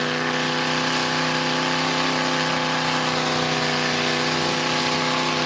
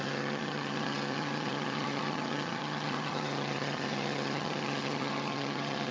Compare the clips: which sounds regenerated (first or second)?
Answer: second